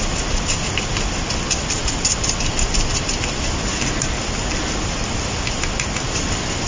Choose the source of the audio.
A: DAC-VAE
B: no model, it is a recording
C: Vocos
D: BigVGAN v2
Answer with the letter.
B